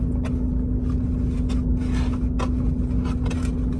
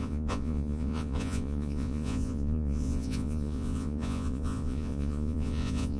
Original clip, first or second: first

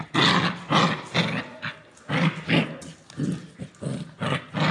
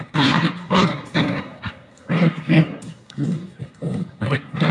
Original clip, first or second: first